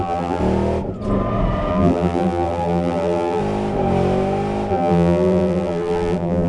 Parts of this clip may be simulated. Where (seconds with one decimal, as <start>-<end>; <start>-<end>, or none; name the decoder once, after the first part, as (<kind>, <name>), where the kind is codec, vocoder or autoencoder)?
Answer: 0.0-0.4 (vocoder, BigVGAN v2); 1.7-3.4; 4.7-6.5